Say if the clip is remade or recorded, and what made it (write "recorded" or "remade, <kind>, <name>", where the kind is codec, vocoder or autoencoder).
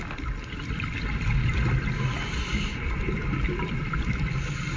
recorded